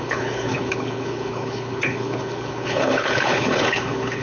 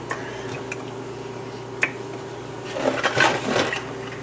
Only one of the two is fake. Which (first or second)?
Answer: first